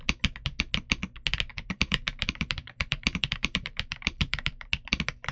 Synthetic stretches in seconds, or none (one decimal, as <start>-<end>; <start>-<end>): 1.5-4.7

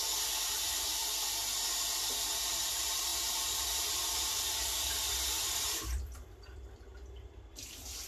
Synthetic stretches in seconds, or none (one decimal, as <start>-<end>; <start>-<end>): 0.0-1.0; 1.8-3.1; 3.7-8.1

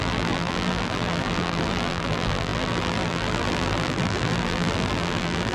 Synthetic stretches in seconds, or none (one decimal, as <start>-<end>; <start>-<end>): 0.0-5.5

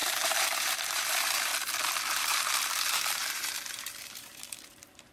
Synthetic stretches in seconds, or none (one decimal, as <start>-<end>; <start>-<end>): 0.0-1.5; 2.1-5.1

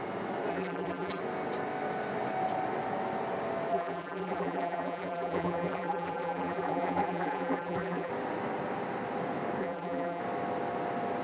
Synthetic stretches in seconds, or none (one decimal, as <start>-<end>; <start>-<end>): 0.5-1.2; 3.7-8.1; 9.6-10.2

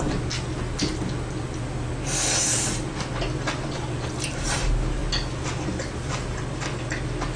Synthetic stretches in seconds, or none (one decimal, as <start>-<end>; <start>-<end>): none